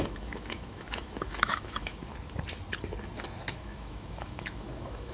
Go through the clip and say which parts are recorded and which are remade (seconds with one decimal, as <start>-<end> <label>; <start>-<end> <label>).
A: 0.0-2.1 remade; 2.1-3.5 recorded; 3.5-5.1 remade